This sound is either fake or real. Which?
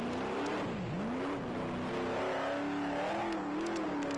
real